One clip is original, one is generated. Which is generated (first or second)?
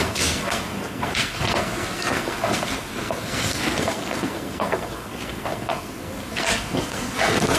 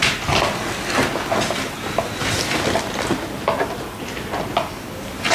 first